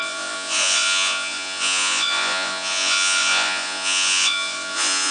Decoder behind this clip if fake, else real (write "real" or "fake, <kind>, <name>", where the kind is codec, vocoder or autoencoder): fake, vocoder, Vocos